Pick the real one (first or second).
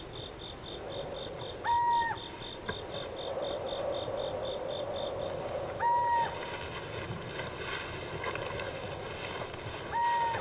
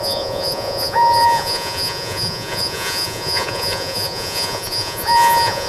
first